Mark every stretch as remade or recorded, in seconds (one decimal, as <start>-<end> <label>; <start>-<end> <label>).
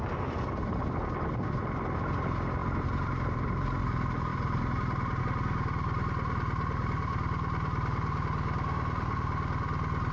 0.0-2.6 recorded; 2.6-3.8 remade; 3.8-4.3 recorded; 4.3-5.2 remade; 5.2-10.1 recorded